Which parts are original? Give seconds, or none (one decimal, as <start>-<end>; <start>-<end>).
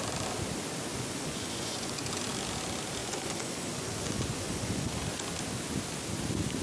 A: 0.0-0.9; 2.0-3.0; 4.9-6.6